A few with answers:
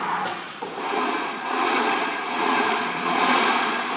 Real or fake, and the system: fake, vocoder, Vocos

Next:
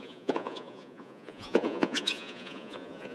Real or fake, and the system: fake, vocoder, Vocos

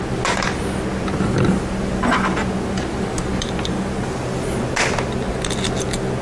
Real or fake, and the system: real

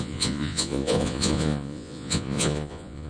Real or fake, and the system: fake, vocoder, Vocos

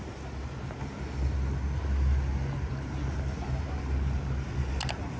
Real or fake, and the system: real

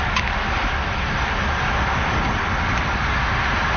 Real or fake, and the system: real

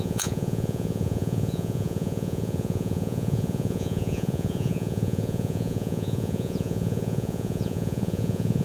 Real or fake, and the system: fake, vocoder, Vocos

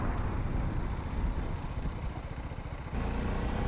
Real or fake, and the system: real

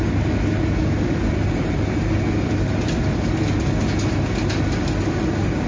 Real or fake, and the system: real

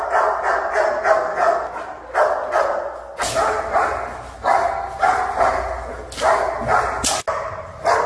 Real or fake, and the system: real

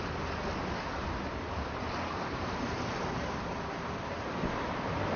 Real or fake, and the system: real